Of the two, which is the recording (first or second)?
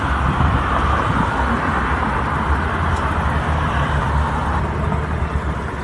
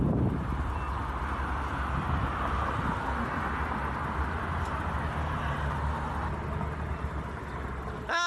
second